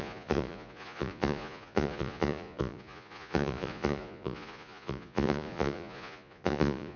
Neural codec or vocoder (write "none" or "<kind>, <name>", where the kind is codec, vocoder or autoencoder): vocoder, Vocos